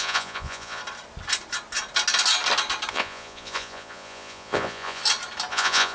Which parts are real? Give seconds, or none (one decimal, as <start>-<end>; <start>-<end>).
0.8-2.9; 5.0-5.5